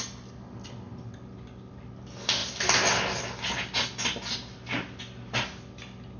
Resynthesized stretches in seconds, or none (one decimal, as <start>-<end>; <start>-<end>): none